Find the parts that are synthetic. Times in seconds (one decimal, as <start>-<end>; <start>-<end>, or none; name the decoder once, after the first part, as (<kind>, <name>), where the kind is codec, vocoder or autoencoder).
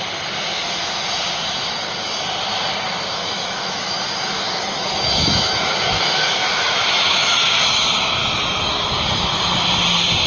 3.2-7.4 (autoencoder, DAC-VAE); 8.2-8.9